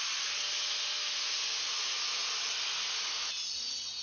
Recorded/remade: recorded